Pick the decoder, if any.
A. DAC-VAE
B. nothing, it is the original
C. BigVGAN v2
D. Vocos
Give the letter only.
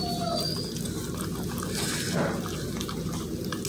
B